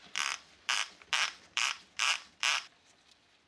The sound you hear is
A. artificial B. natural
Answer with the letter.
A